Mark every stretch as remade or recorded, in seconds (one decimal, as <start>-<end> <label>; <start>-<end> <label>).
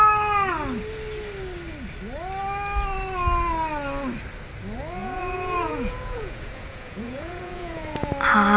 0.0-5.0 recorded; 5.0-8.1 remade; 8.1-8.6 recorded